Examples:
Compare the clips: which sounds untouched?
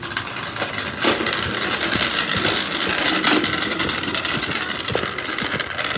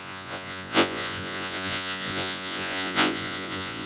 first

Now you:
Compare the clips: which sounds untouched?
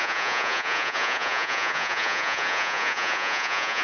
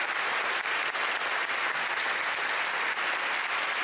second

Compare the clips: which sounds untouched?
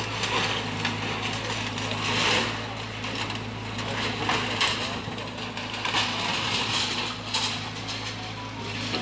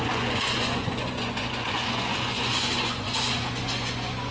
first